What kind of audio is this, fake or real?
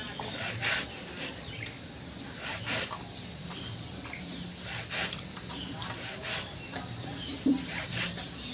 real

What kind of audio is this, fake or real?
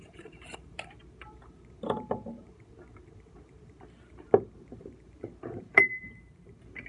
fake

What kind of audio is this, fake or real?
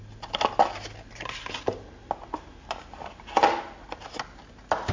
real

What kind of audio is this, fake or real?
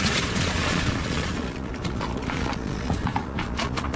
fake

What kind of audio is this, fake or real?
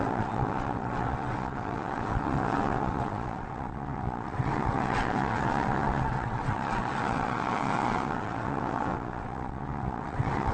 fake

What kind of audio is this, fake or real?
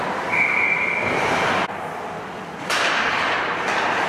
real